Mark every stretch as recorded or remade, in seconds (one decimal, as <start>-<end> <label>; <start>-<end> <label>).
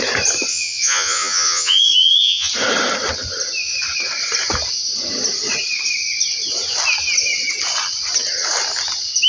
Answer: 0.0-0.5 recorded; 0.5-2.5 remade; 2.5-9.3 recorded